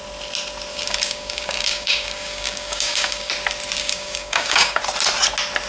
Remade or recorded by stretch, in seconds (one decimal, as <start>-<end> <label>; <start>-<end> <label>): 0.0-0.7 recorded; 0.7-3.3 remade; 3.3-3.8 recorded; 3.8-4.8 remade; 4.8-5.7 recorded